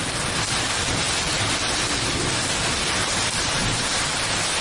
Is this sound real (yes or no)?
yes